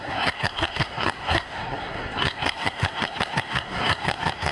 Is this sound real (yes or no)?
no